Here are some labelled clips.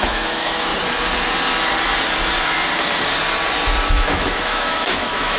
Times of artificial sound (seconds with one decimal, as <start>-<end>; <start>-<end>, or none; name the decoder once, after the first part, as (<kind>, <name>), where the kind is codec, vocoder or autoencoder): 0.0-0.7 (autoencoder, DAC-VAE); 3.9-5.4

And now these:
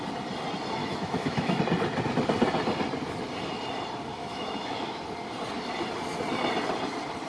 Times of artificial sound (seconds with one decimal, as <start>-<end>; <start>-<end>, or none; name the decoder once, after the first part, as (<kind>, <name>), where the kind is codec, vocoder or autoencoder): 0.8-1.6 (autoencoder, DAC-VAE); 4.1-5.0

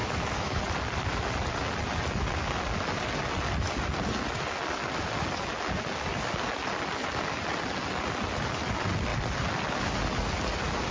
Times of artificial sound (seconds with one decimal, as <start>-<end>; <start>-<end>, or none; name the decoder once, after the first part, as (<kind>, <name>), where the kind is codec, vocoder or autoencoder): 0.0-0.6 (autoencoder, DAC-VAE)

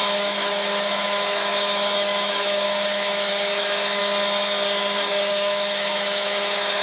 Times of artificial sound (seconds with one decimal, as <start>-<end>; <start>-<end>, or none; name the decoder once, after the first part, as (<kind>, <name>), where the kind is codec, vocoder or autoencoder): 0.0-4.0 (autoencoder, DAC-VAE); 5.3-6.8

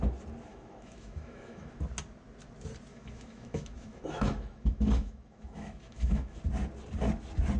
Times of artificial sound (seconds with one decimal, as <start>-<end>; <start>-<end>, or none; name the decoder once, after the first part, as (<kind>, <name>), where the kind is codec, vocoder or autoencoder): 0.5-1.7 (autoencoder, DAC-VAE); 2.9-6.4

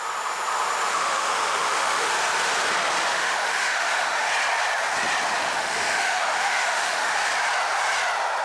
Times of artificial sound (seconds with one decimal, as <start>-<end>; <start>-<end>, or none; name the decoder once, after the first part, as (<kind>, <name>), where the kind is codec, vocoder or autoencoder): 0.9-2.1 (autoencoder, DAC-VAE); 3.1-4.3; 5.4-7.1

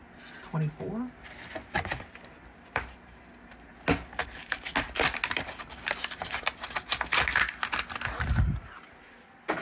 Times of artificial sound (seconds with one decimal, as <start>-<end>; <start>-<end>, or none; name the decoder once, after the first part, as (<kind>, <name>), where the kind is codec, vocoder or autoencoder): none